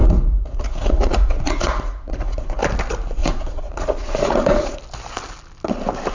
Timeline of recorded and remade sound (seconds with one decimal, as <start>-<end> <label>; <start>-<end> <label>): 0.0-2.6 remade; 2.6-3.2 recorded; 3.2-4.8 remade; 4.8-6.1 recorded